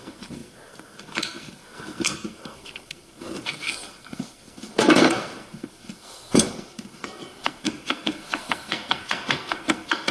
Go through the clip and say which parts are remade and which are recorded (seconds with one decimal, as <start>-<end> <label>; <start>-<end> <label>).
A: 0.0-10.1 remade